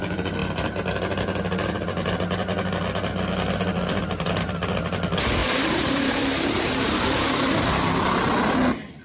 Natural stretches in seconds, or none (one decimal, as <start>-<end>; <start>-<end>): 0.0-5.4; 7.3-9.0